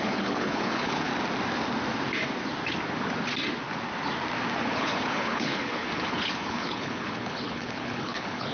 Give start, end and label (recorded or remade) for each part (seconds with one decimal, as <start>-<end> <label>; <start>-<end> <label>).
0.0-1.1 remade; 1.1-4.6 recorded; 4.6-8.5 remade